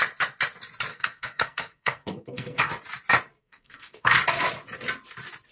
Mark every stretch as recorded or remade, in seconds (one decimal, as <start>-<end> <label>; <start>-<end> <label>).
0.0-0.9 recorded; 0.9-2.7 remade; 2.7-3.4 recorded; 3.4-4.2 remade; 4.2-5.5 recorded